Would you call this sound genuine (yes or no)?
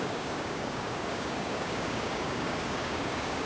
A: no